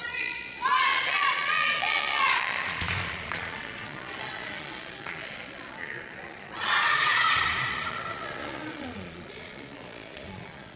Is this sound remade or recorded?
remade